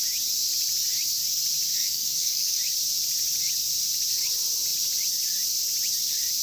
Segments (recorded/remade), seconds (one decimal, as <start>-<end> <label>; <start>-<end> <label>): 0.0-1.7 recorded; 1.7-2.6 remade; 2.6-6.4 recorded